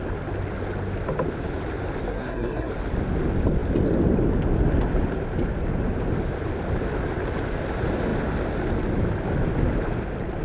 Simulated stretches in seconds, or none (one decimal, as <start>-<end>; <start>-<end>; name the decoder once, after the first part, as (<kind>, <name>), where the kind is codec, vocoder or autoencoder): 2.1-2.7 (codec, SNAC)